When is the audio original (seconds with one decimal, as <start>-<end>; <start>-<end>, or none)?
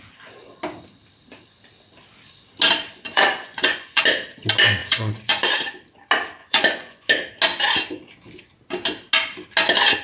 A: 0.0-3.1; 4.0-4.8; 5.4-6.4; 7.1-10.0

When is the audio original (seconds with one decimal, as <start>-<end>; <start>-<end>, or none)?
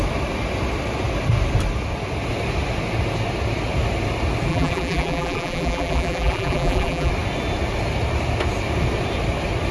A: 0.0-4.5; 7.1-9.7